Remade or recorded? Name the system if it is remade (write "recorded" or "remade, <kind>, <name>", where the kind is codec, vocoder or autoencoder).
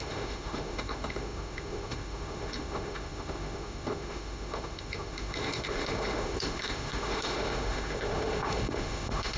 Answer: remade, autoencoder, DAC-VAE